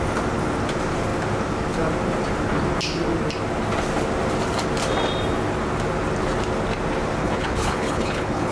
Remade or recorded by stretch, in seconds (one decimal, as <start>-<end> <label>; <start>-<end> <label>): 0.0-7.2 recorded; 7.2-8.5 remade

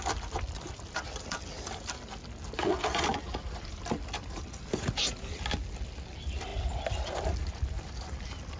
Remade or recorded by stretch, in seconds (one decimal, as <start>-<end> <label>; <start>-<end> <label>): 0.0-8.6 recorded

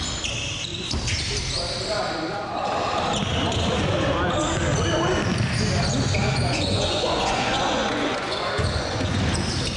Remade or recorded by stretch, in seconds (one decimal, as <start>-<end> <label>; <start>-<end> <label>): 0.0-6.2 recorded; 6.2-9.2 remade; 9.2-9.8 recorded

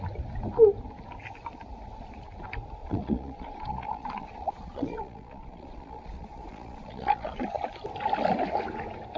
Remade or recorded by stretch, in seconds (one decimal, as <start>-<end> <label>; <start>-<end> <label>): 0.0-2.8 recorded; 2.8-7.6 remade; 7.6-9.2 recorded

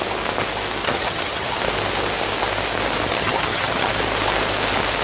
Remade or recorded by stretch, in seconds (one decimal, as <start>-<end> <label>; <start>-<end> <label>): 0.0-0.8 recorded; 0.8-1.6 remade; 1.6-3.1 recorded; 3.1-3.9 remade; 3.9-5.0 recorded